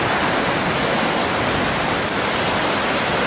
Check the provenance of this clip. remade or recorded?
recorded